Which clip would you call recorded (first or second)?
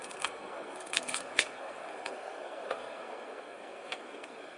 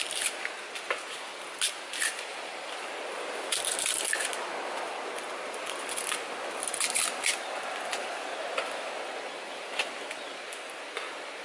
second